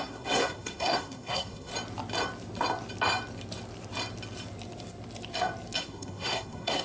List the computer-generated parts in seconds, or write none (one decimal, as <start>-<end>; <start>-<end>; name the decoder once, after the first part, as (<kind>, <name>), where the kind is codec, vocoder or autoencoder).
0.0-1.7 (codec, SNAC); 5.8-6.8